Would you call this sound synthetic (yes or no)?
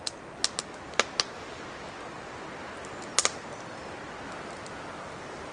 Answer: no